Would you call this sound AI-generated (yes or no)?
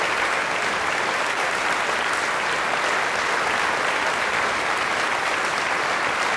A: no